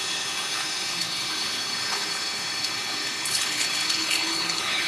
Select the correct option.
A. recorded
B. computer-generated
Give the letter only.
B